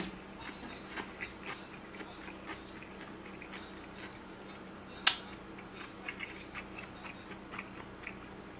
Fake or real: real